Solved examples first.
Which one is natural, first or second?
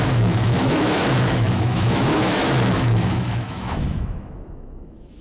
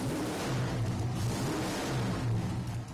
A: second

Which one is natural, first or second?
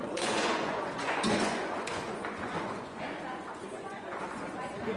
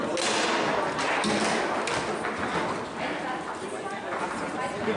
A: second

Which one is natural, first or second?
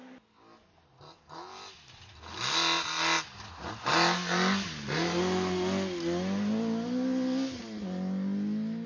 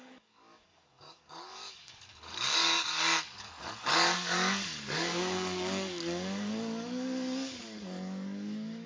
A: first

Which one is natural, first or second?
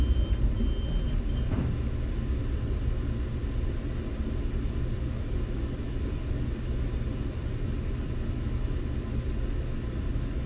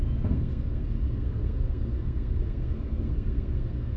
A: first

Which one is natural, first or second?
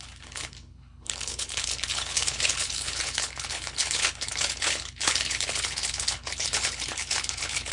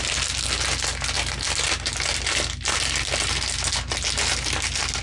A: second